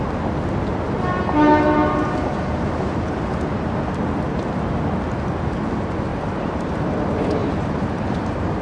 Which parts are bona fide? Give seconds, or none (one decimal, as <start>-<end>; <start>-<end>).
0.0-0.7; 3.8-6.1; 6.8-7.4